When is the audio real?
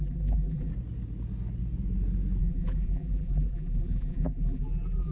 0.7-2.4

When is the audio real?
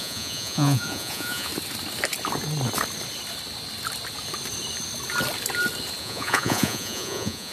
1.5-6.0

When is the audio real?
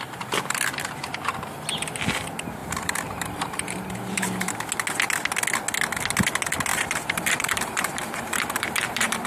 0.0-2.6; 4.4-6.7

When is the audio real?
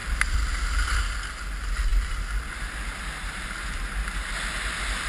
1.0-5.1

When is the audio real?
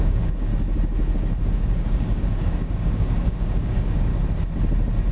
0.5-1.5; 4.1-5.1